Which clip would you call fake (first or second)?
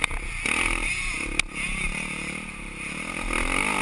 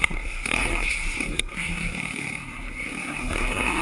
second